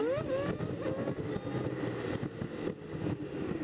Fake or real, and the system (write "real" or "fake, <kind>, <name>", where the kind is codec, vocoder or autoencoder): real